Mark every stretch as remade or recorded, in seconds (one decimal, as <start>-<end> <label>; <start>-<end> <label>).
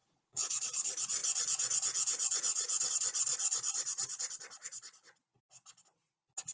0.0-0.6 remade; 0.6-1.2 recorded; 1.2-2.9 remade; 2.9-6.5 recorded